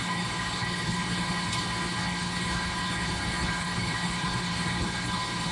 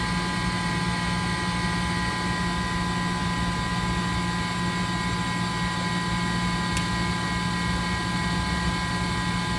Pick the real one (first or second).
second